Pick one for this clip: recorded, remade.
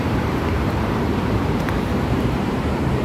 remade